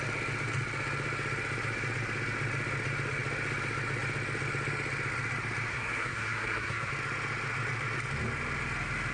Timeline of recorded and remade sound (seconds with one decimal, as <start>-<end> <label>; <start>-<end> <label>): 0.0-5.7 recorded; 5.7-6.9 remade; 6.9-9.1 recorded